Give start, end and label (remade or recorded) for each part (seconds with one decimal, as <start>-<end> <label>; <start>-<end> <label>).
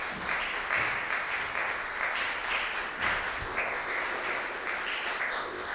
0.0-3.4 recorded; 3.4-4.0 remade; 4.0-5.2 recorded; 5.2-5.7 remade